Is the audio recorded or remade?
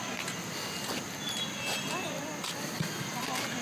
recorded